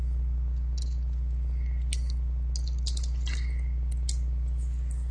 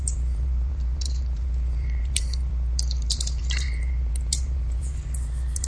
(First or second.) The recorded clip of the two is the first